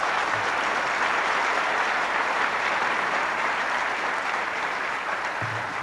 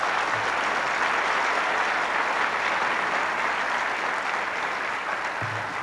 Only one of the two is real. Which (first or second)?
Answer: second